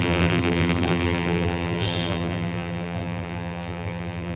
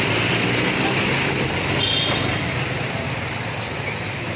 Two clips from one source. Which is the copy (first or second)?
first